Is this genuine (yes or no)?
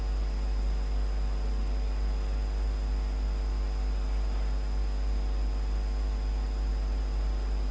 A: yes